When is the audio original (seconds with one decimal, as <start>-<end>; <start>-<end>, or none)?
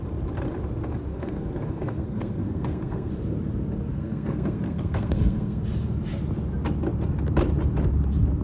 0.0-1.1; 3.1-3.9; 5.6-8.4